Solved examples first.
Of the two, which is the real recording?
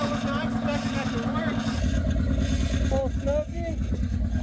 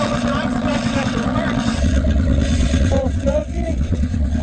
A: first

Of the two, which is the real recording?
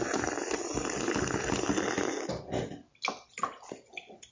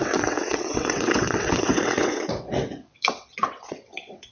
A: first